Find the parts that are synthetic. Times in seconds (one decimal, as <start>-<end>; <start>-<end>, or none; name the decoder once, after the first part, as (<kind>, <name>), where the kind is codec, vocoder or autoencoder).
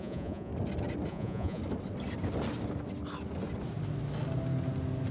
0.0-0.5 (vocoder, Vocos); 1.1-1.6